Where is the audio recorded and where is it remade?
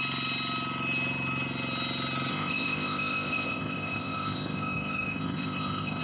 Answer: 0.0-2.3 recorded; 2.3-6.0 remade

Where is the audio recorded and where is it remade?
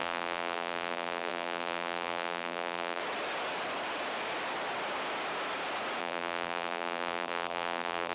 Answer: 0.0-3.0 remade; 3.0-6.0 recorded; 6.0-8.1 remade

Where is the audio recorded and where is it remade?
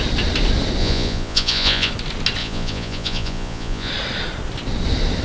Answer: 0.0-0.8 recorded; 0.8-1.9 remade; 1.9-2.4 recorded; 2.4-3.9 remade; 3.9-5.2 recorded